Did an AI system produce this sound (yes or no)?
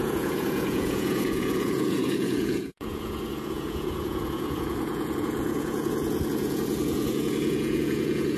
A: yes